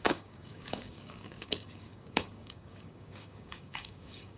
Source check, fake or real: fake